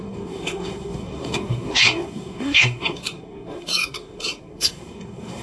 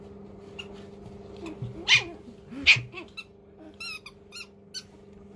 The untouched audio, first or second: second